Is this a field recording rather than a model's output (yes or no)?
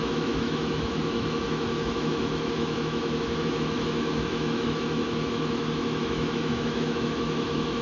no